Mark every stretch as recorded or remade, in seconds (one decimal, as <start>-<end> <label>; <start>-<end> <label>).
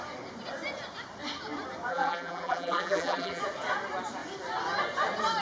0.0-1.9 recorded; 1.9-3.4 remade; 3.4-5.4 recorded